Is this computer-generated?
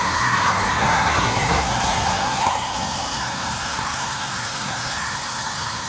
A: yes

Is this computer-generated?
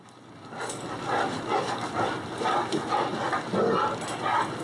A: no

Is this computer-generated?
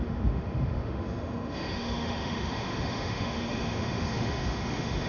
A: yes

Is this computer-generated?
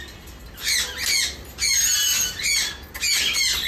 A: no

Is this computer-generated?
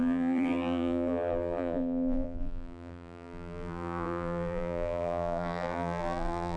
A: yes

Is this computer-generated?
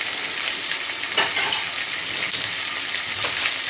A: no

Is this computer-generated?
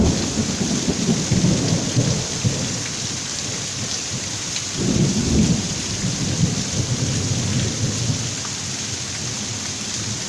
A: no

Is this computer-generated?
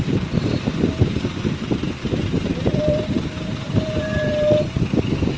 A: yes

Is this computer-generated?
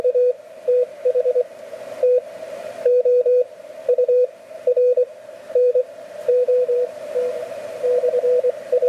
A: yes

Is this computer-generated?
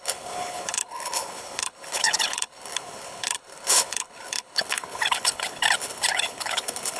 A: yes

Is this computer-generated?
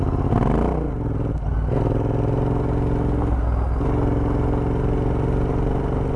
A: no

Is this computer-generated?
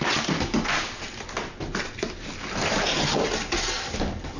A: no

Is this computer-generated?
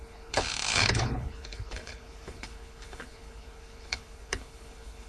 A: yes